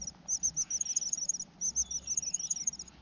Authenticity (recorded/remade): recorded